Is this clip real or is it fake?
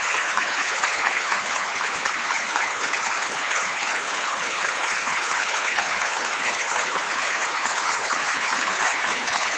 fake